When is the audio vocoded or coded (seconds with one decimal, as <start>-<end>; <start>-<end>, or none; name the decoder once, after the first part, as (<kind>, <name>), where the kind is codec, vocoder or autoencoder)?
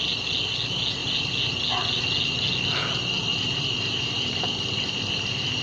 3.3-5.0 (vocoder, BigVGAN v2)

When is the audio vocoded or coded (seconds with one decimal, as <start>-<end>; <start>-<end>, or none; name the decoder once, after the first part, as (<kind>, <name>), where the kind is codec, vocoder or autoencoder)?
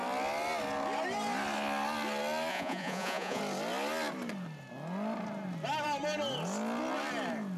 2.5-3.4 (vocoder, Vocos)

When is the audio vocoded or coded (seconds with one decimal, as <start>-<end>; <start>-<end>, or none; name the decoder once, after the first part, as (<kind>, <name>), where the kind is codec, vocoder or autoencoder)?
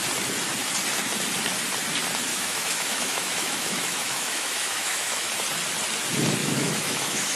2.3-5.3 (autoencoder, DAC-VAE); 6.4-7.4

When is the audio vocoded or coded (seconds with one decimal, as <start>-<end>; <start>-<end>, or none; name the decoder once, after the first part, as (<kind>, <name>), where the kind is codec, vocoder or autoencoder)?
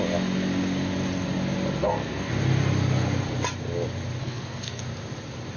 1.8-2.3 (codec, SNAC); 4.2-4.8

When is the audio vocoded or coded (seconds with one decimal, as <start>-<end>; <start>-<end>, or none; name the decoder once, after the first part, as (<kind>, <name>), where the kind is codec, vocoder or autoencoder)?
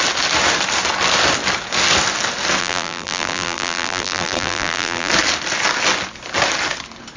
2.6-5.1 (vocoder, BigVGAN v2)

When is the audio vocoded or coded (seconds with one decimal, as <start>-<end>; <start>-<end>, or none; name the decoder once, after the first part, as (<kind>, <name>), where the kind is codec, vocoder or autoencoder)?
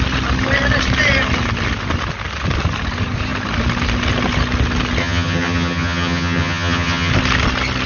5.0-7.1 (vocoder, HiFi-GAN)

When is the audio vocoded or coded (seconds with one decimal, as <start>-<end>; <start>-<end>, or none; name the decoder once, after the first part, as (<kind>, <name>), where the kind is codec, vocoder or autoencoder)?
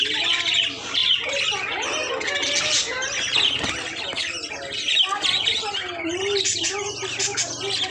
none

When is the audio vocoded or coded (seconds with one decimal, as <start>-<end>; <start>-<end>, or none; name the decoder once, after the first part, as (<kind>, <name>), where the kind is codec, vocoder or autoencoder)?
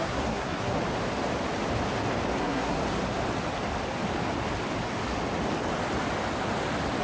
0.0-0.8 (codec, SNAC); 2.4-2.8